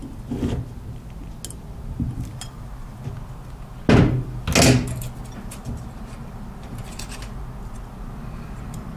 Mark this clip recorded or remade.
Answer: recorded